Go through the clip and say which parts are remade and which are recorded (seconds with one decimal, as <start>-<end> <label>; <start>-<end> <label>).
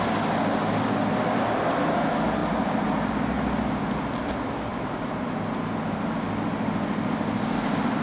0.0-2.4 recorded; 2.4-3.1 remade; 3.1-4.7 recorded; 4.7-5.3 remade; 5.3-8.0 recorded